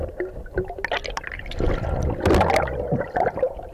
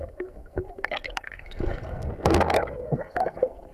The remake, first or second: second